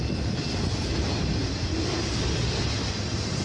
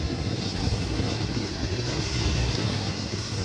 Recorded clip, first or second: first